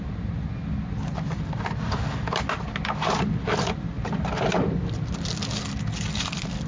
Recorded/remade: recorded